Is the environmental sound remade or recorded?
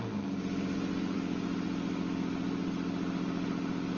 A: recorded